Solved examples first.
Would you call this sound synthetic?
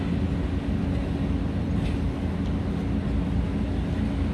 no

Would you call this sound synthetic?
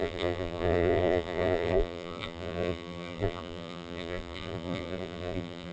yes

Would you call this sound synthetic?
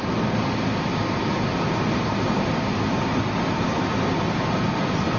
no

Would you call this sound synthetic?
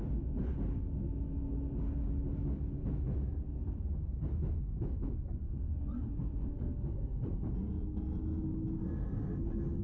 no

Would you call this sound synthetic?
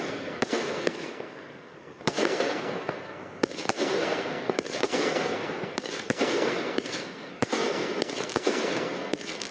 yes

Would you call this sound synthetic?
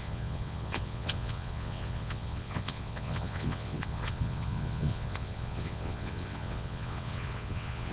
yes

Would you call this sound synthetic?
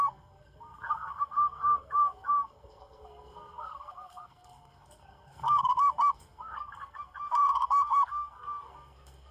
yes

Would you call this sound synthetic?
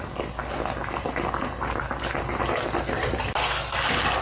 no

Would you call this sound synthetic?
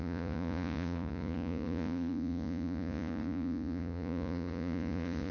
yes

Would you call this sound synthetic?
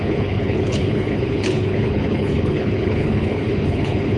yes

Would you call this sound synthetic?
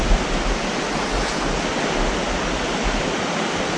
no